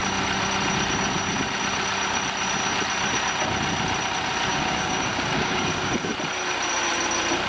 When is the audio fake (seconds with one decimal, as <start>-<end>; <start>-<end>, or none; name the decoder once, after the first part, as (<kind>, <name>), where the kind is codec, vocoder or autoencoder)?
4.5-6.1 (codec, DAC)

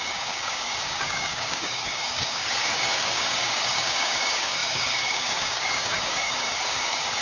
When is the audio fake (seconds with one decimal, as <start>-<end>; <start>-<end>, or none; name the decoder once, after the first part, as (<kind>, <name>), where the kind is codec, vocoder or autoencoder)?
0.0-7.2 (codec, DAC)

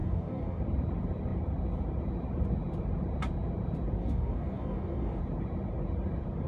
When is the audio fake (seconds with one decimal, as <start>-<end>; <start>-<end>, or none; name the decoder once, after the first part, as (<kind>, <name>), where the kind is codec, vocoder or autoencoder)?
0.0-0.6 (codec, DAC); 4.0-5.2

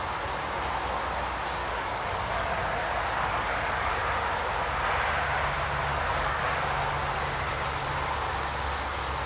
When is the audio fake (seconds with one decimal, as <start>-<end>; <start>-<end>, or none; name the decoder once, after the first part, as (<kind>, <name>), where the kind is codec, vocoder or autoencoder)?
1.6-4.0 (codec, DAC); 5.9-6.4

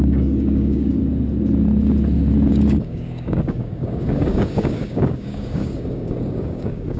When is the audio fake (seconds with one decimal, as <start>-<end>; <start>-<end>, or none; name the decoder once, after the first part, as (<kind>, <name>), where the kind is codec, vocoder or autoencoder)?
0.0-1.0 (codec, DAC); 2.5-7.0

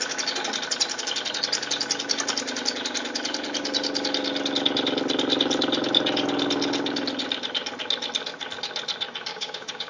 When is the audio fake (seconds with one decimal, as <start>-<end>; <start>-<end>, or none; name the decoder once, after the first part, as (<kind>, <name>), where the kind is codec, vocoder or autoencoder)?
9.3-9.9 (codec, DAC)

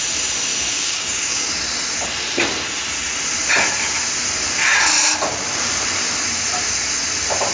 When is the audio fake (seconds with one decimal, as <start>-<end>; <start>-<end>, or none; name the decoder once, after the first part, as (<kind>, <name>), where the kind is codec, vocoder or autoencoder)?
0.7-1.5 (codec, DAC)

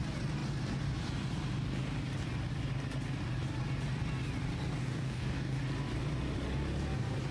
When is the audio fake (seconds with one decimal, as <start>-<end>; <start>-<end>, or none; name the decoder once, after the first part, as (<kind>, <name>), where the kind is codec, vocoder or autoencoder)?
4.8-5.6 (codec, DAC)